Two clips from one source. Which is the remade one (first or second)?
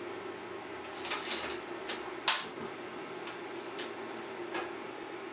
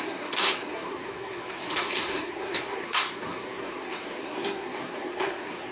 second